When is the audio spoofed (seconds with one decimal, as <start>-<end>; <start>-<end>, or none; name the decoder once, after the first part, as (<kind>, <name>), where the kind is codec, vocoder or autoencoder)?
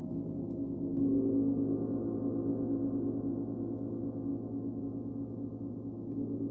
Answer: 4.3-4.8 (autoencoder, DAC-VAE)